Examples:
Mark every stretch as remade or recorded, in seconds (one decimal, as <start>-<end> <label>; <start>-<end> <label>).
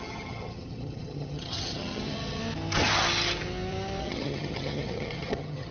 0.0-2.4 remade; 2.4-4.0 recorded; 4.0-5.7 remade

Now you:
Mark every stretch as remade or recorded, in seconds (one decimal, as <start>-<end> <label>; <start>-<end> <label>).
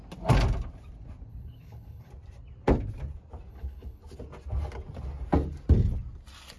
0.0-1.3 recorded; 1.3-2.1 remade; 2.1-3.5 recorded; 3.5-4.0 remade; 4.0-6.6 recorded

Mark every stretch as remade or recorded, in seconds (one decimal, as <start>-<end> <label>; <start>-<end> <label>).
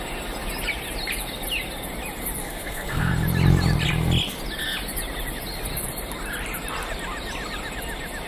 0.0-2.4 recorded; 2.4-3.1 remade; 3.1-8.3 recorded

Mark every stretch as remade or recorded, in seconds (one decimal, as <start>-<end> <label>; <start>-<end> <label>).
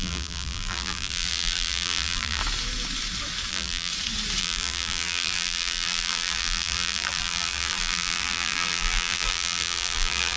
0.0-2.4 remade; 2.4-3.5 recorded; 3.5-3.9 remade; 3.9-4.4 recorded; 4.4-10.4 remade